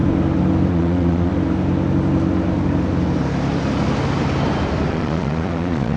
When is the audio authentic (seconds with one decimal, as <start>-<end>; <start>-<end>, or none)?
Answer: 0.0-0.7; 1.3-4.9